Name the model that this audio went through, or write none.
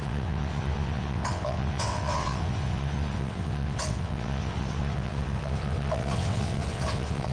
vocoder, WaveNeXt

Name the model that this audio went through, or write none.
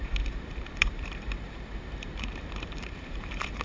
vocoder, BigVGAN v2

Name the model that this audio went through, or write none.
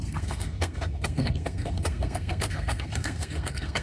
codec, SNAC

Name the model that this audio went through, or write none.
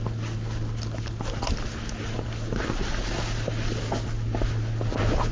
none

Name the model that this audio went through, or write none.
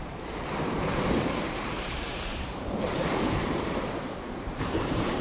vocoder, BigVGAN v2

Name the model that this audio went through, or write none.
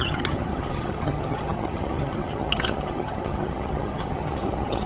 vocoder, HiFi-GAN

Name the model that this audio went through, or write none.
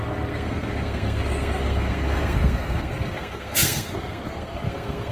codec, SNAC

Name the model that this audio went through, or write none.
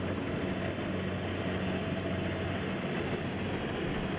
none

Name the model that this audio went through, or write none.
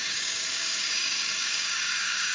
codec, DAC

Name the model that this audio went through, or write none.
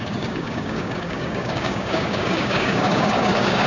codec, DAC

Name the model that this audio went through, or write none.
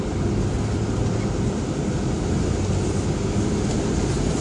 none